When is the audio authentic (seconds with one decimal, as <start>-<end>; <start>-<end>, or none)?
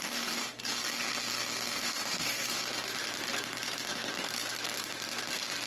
0.8-1.8; 2.6-5.7